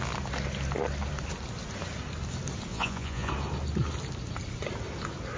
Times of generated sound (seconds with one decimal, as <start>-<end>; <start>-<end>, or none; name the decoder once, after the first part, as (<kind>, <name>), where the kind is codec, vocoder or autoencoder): 2.7-3.3 (vocoder, Vocos)